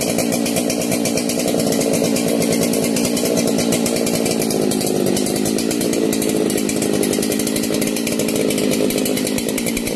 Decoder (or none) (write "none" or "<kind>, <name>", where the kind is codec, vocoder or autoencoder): none